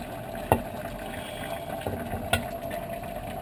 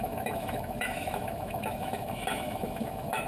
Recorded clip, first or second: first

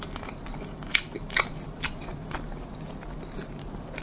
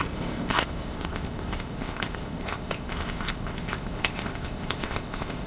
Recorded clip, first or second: first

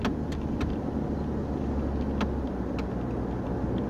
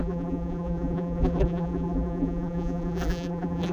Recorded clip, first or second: first